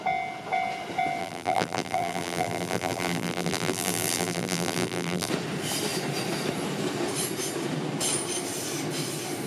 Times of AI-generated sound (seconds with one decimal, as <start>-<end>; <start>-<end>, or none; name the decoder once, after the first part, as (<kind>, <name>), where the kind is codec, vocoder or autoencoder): 1.2-5.3 (vocoder, BigVGAN v2)